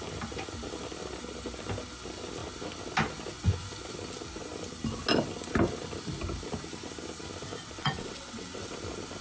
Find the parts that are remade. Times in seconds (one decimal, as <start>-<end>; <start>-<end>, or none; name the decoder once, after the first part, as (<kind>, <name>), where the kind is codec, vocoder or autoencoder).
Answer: 7.8-8.7 (vocoder, WaveNeXt)